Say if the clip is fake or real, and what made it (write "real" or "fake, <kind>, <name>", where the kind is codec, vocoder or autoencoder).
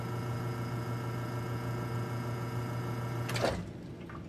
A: real